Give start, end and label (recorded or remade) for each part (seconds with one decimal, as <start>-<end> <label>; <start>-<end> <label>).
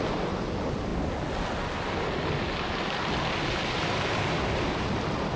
0.0-5.4 recorded